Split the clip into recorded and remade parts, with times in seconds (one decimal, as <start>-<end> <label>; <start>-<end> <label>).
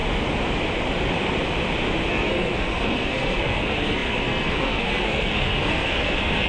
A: 0.0-2.1 recorded; 2.1-6.5 remade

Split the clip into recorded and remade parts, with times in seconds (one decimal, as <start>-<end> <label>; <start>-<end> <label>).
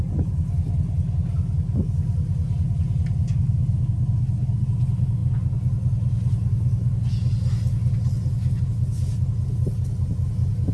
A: 0.0-10.7 recorded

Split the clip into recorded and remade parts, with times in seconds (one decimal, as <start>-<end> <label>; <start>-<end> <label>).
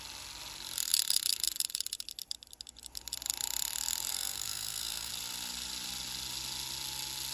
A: 0.0-4.1 recorded; 4.1-5.1 remade; 5.1-7.3 recorded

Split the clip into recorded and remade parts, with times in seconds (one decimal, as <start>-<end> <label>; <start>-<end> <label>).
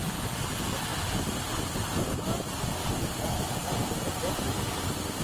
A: 0.0-5.2 recorded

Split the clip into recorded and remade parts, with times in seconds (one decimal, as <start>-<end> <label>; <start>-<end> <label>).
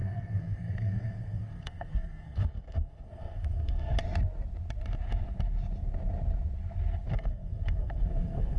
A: 0.0-3.9 remade; 3.9-7.1 recorded; 7.1-8.6 remade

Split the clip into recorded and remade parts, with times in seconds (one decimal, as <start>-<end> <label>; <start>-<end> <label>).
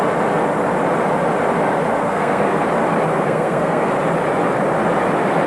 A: 0.0-2.0 recorded; 2.0-2.6 remade; 2.6-3.1 recorded; 3.1-3.9 remade; 3.9-5.5 recorded